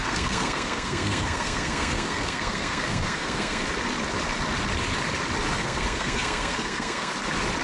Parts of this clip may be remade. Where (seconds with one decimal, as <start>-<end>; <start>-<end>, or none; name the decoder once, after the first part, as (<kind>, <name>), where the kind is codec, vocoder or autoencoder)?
0.0-3.6 (codec, SNAC); 5.6-7.1